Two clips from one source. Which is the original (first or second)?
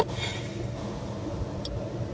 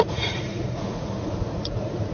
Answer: first